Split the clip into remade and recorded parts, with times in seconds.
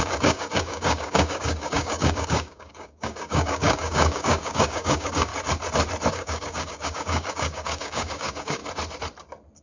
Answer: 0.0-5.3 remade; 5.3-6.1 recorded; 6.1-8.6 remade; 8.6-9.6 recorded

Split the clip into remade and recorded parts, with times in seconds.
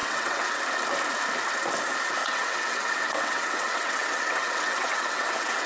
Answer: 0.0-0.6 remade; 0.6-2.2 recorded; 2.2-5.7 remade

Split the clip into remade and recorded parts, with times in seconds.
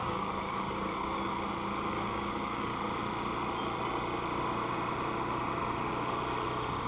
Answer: 0.0-1.3 remade; 1.3-1.9 recorded; 1.9-2.7 remade; 2.7-6.9 recorded